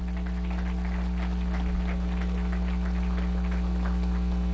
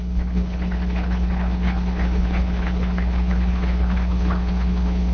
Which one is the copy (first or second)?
second